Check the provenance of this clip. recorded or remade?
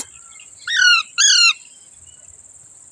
recorded